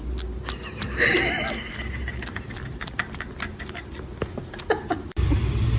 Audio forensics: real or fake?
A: real